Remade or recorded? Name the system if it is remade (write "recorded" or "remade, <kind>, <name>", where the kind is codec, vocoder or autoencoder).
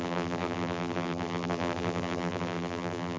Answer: remade, vocoder, BigVGAN v2